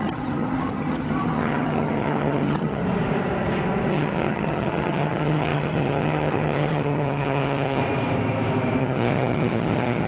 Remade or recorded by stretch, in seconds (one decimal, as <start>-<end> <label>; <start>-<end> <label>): 0.0-2.8 remade; 2.8-3.9 recorded; 3.9-7.8 remade; 7.8-8.8 recorded; 8.8-10.1 remade